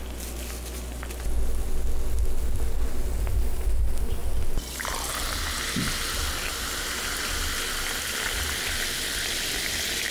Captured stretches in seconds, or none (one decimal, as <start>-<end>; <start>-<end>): 0.0-10.1